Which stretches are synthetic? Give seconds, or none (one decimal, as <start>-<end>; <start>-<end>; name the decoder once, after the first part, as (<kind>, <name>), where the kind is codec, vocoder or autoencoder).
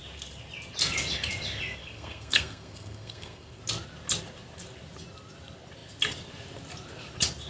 1.8-3.6 (codec, SNAC)